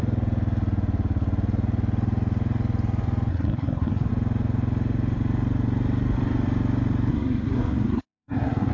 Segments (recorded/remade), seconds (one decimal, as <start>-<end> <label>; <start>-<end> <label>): 0.0-3.3 recorded; 3.3-4.1 remade; 4.1-7.1 recorded; 7.1-8.7 remade